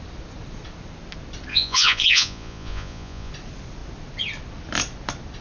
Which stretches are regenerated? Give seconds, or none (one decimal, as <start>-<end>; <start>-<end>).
1.5-3.3